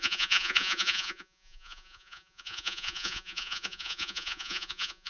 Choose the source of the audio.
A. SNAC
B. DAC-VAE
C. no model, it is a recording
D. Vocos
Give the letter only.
D